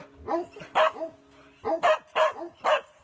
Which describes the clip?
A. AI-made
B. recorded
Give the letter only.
B